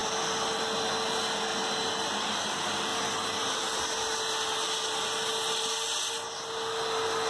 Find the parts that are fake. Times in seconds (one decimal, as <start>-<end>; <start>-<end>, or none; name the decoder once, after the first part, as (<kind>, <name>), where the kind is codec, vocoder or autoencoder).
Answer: 0.0-0.9 (vocoder, BigVGAN v2); 1.5-2.4